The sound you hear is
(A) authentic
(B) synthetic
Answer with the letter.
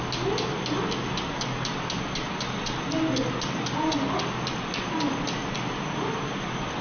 A